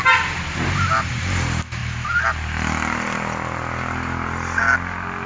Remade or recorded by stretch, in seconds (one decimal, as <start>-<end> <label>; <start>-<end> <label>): 0.0-5.3 recorded